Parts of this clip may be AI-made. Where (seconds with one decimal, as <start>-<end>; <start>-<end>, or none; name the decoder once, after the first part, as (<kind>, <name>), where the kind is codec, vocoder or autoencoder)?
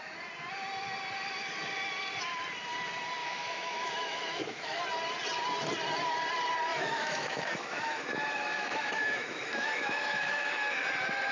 3.2-4.8 (autoencoder, DAC-VAE); 6.7-10.9